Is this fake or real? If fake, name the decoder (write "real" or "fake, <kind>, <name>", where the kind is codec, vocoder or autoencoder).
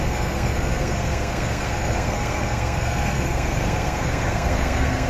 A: fake, codec, SNAC